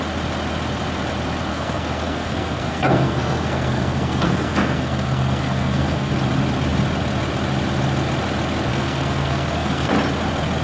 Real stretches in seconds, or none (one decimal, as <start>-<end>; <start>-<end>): 0.0-1.5; 6.1-8.7; 9.9-10.6

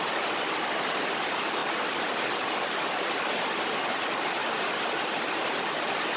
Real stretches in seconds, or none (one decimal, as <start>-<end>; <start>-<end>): 0.0-6.2

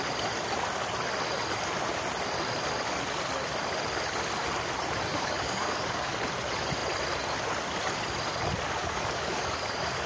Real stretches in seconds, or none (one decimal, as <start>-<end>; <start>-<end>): 0.0-5.1; 6.1-8.8

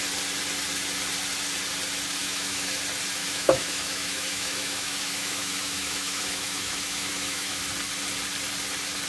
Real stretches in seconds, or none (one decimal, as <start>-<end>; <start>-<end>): 0.0-2.2; 2.8-3.2; 7.6-9.1

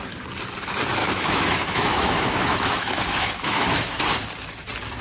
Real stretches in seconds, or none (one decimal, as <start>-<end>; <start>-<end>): 0.0-1.0; 4.0-5.0

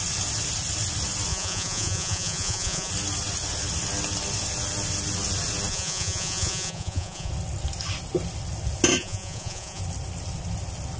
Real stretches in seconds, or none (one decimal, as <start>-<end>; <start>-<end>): 0.0-1.3; 2.9-5.7; 7.3-9.0; 9.8-11.0

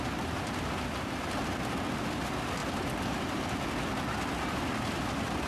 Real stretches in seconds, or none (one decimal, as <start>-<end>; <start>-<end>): 0.0-5.5

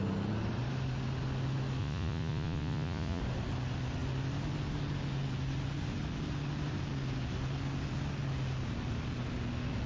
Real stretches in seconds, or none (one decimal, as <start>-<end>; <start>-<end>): 0.0-1.8; 3.2-9.9